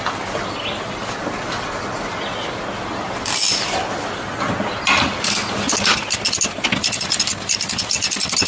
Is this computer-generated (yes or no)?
no